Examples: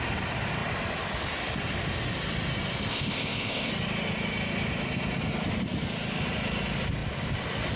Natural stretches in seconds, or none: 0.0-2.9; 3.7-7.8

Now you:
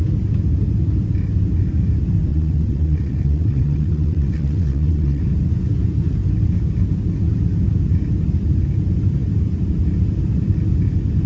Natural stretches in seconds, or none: 0.0-2.3; 5.2-11.3

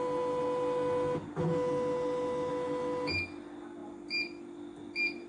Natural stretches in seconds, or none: 0.0-5.3

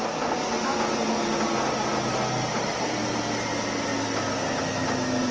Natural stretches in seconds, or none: 3.9-4.6

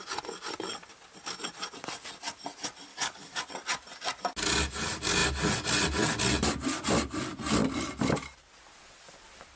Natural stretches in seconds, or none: 0.0-2.9; 3.4-9.6

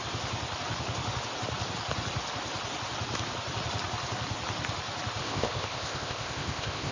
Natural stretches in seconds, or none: 0.0-5.2